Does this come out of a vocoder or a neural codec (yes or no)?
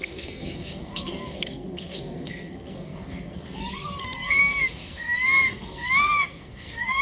yes